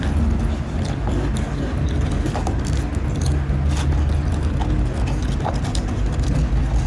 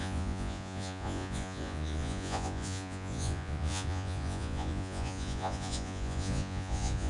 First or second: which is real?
first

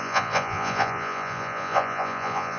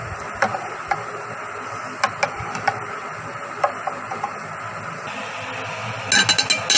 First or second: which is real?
second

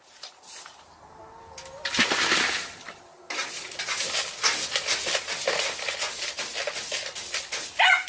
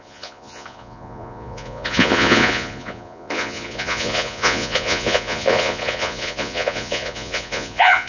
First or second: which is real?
first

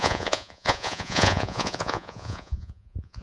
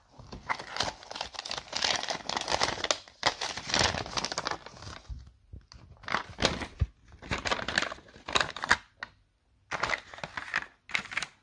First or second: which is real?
second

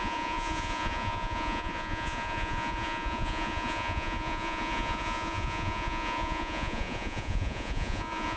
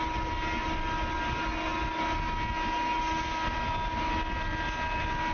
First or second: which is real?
second